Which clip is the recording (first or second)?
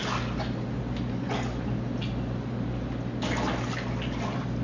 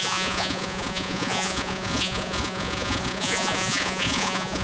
first